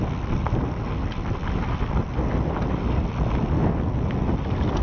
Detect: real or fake real